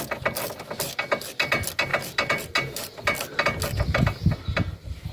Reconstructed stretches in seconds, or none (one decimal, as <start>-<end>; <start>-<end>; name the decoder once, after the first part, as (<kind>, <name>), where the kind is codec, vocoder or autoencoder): none